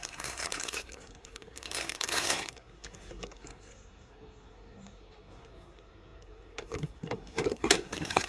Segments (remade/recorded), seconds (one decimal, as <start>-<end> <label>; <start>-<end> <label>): 0.0-8.3 remade